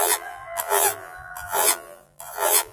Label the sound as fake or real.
fake